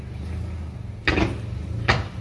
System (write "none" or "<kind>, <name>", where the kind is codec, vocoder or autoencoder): none